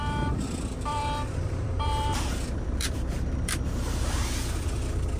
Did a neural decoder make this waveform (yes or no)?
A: yes